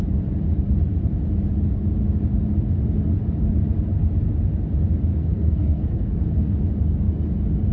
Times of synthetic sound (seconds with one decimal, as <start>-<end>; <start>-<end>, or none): 5.1-6.6